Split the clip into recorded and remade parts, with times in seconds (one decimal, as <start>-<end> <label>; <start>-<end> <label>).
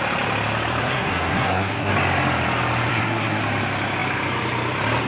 0.0-0.8 recorded; 0.8-1.9 remade; 1.9-2.9 recorded; 2.9-3.4 remade; 3.4-5.1 recorded